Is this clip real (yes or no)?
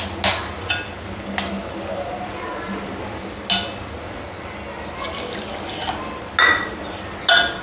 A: yes